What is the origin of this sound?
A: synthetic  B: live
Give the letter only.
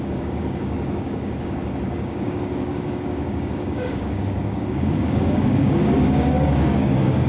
A